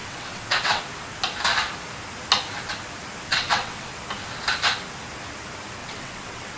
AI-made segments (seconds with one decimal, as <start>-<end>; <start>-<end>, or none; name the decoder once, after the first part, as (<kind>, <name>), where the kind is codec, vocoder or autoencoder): 0.0-0.8 (vocoder, WaveNeXt); 3.3-3.9; 5.8-6.6